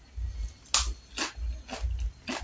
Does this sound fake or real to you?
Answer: real